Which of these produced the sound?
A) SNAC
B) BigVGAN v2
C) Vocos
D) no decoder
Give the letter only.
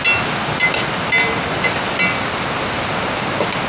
D